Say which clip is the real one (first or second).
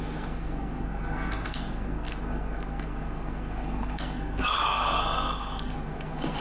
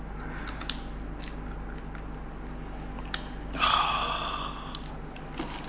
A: second